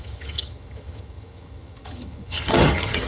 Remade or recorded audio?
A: remade